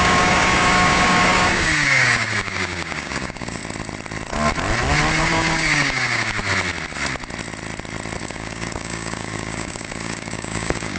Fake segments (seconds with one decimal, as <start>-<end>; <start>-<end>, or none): 0.0-3.6; 5.2-6.4; 8.2-11.0